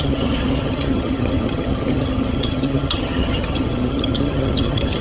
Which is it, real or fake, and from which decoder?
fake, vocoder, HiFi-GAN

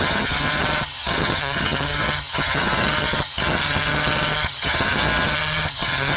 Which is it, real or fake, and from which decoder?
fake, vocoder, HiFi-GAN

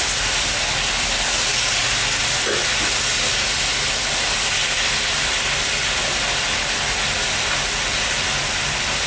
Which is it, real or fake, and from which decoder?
real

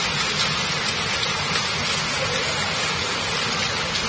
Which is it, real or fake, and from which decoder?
real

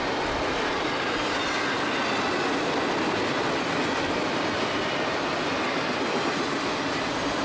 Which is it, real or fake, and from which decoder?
real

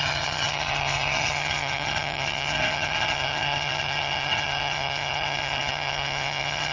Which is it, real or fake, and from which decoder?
fake, vocoder, HiFi-GAN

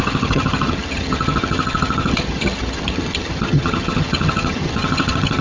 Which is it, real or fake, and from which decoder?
fake, vocoder, HiFi-GAN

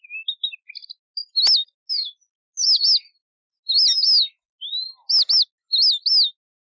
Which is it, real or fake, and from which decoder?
real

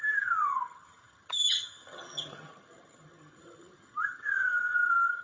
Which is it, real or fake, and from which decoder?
fake, vocoder, HiFi-GAN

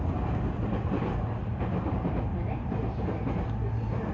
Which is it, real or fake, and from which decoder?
real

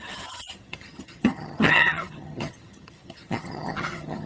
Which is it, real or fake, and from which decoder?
fake, vocoder, HiFi-GAN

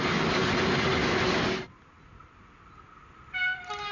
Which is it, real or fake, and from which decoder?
real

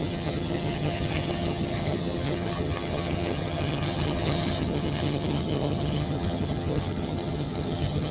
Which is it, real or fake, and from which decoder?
fake, vocoder, HiFi-GAN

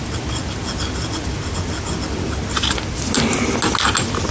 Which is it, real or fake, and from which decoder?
real